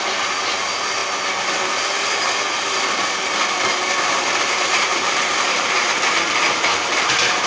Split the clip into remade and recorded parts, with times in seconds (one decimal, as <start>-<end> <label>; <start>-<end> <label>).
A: 0.0-4.9 recorded; 4.9-7.5 remade